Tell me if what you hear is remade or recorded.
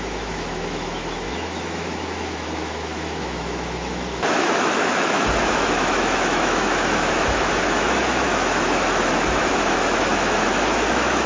remade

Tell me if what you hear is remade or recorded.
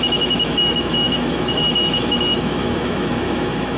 remade